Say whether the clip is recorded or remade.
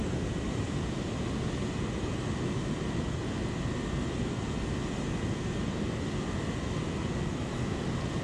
recorded